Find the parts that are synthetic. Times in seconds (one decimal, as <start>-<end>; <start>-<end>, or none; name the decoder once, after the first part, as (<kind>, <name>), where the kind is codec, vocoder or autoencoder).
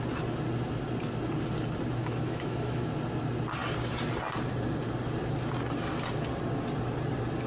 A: 2.0-2.9 (autoencoder, DAC-VAE)